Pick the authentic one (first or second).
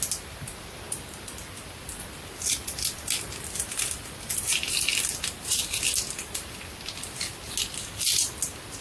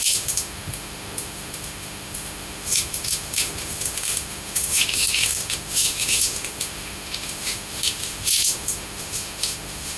first